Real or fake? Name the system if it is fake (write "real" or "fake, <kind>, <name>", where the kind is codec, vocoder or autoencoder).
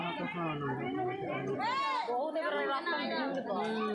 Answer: real